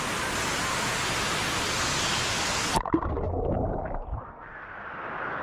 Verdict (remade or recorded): recorded